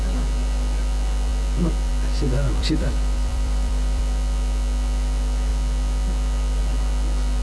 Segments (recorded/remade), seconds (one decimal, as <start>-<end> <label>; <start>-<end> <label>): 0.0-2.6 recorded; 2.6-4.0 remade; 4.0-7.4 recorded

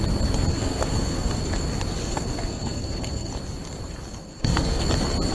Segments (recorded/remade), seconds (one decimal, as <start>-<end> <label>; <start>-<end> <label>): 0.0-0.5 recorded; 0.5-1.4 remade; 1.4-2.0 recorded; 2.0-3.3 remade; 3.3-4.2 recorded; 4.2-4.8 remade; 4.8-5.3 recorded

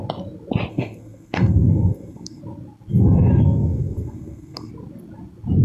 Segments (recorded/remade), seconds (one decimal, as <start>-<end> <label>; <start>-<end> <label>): 0.0-0.7 recorded; 0.7-2.4 remade; 2.4-2.9 recorded; 2.9-4.7 remade; 4.7-5.6 recorded

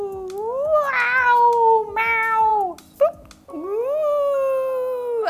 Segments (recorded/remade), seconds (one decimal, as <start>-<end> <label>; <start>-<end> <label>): 0.0-5.3 recorded

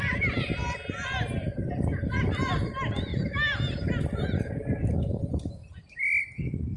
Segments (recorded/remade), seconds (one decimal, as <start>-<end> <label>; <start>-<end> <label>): 0.0-0.6 remade; 0.6-1.7 recorded; 1.7-3.1 remade; 3.1-4.8 recorded; 4.8-6.8 remade